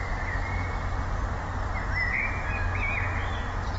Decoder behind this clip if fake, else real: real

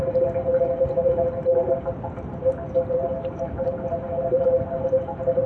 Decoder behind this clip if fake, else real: real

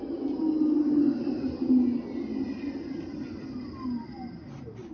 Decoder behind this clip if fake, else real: real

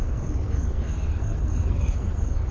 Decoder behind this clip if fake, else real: fake, codec, SNAC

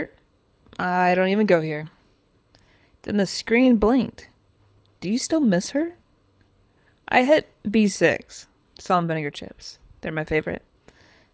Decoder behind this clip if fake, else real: fake, codec, HILCodec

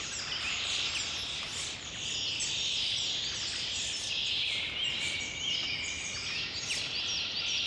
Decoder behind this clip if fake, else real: real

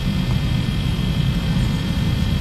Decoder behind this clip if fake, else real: fake, vocoder, BigVGAN v2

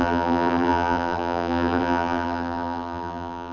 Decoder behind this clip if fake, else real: fake, vocoder, BigVGAN v2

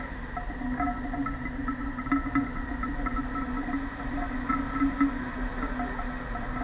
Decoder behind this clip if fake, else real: real